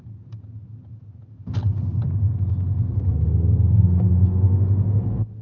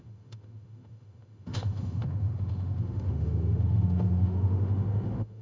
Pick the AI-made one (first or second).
second